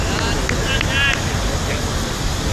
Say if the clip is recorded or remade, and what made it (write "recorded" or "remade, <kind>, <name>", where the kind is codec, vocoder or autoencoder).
recorded